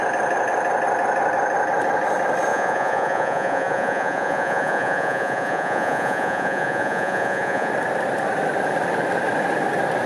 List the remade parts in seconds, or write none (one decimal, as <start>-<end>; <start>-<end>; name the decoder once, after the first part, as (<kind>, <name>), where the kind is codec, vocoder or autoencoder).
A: 2.5-7.7 (vocoder, Vocos)